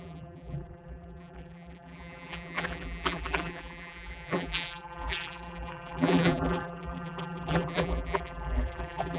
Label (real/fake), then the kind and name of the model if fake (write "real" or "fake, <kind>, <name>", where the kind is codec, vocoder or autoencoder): fake, vocoder, BigVGAN v2